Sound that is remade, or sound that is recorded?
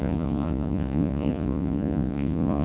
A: remade